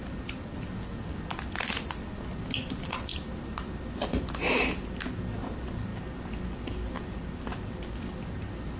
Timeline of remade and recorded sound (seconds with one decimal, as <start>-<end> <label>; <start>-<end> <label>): 0.0-8.8 recorded

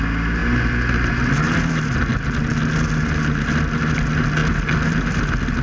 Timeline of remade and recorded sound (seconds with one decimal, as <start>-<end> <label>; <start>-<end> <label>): 0.0-5.6 recorded

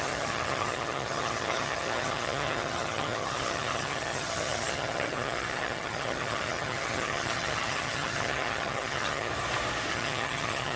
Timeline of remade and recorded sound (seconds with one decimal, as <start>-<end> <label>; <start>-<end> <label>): 0.0-9.3 remade; 9.3-9.9 recorded; 9.9-10.8 remade

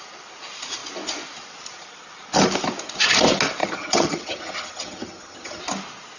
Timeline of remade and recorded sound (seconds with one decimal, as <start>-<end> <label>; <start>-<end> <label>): 0.0-3.6 recorded; 3.6-5.6 remade; 5.6-6.2 recorded

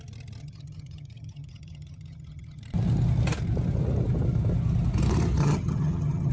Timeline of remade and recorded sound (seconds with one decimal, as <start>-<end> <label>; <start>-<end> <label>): 0.0-0.4 recorded; 0.4-2.6 remade; 2.6-5.4 recorded; 5.4-6.3 remade

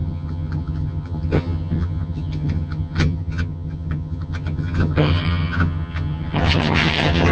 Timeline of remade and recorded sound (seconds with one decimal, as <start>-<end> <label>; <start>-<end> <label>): 0.0-7.3 remade

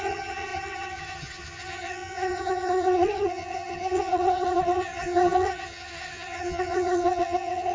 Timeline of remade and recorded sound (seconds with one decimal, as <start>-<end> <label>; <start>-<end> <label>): 0.0-7.7 remade

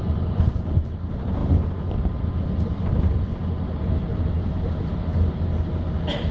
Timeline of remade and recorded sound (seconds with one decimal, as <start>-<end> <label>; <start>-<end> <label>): 0.0-6.3 recorded